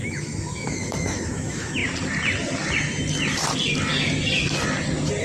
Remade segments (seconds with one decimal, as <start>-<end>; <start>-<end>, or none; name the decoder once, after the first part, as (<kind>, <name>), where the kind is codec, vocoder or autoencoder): 0.0-1.8 (autoencoder, DAC-VAE)